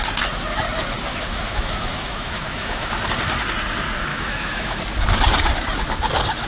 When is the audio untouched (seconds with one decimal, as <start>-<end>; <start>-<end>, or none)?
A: 0.0-1.1; 2.9-4.1; 4.8-6.5